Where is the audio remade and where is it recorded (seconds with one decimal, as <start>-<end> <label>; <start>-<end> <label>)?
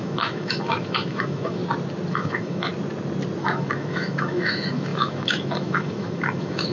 0.0-1.6 remade; 1.6-2.1 recorded; 2.1-2.7 remade; 2.7-3.4 recorded; 3.4-6.7 remade